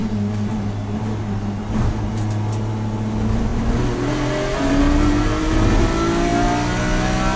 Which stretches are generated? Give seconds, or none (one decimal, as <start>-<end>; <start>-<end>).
none